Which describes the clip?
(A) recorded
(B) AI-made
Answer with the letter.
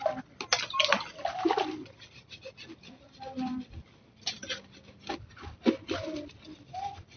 A